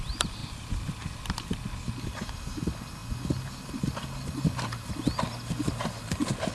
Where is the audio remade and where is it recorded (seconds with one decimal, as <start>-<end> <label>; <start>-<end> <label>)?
0.0-0.4 recorded; 0.4-1.7 remade; 1.7-6.5 recorded